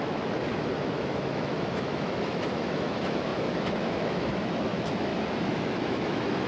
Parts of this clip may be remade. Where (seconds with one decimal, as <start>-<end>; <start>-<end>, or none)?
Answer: 0.0-5.1; 5.6-6.5